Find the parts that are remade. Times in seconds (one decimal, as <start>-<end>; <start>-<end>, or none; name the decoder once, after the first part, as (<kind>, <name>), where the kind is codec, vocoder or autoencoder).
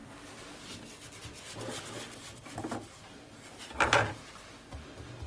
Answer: none